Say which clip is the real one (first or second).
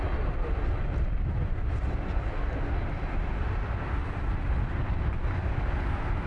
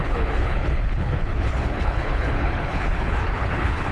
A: first